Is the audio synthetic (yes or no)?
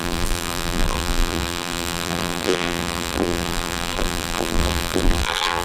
yes